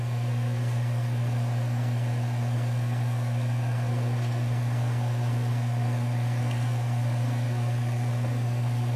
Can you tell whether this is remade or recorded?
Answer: remade